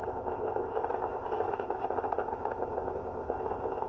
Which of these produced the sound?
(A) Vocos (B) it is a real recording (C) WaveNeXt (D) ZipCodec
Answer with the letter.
D